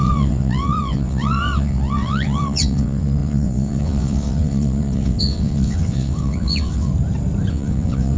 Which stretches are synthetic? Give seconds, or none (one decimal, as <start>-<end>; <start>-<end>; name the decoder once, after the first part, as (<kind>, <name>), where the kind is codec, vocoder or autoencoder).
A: 0.0-6.9 (vocoder, WaveNeXt); 7.5-8.2